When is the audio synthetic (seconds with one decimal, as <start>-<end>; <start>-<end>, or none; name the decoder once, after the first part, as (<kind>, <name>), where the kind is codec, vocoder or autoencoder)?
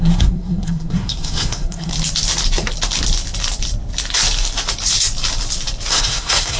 0.0-1.9 (codec, SNAC); 5.9-6.6